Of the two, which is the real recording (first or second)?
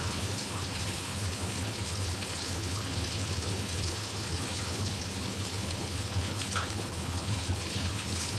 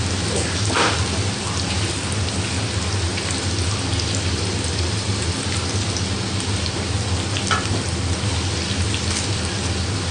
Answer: second